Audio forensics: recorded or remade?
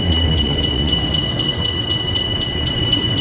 remade